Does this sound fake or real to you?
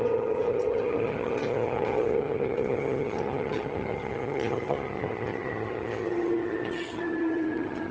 fake